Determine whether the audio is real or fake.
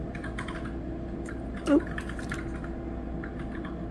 real